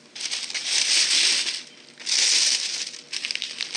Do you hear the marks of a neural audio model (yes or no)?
no